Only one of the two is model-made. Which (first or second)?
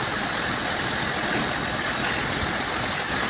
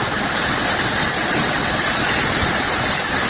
second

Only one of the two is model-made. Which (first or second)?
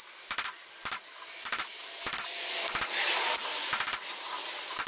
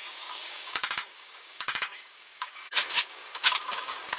second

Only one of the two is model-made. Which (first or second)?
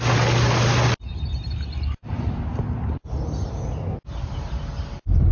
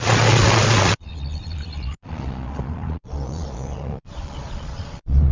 second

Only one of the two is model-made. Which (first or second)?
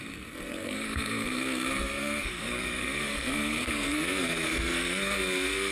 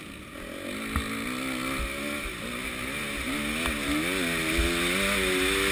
first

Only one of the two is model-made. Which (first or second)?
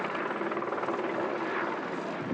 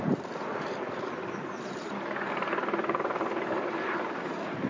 second